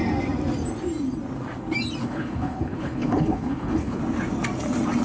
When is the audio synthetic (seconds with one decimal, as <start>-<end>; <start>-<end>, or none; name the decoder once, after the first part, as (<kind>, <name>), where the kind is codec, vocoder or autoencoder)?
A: 2.0-4.0 (codec, HILCodec)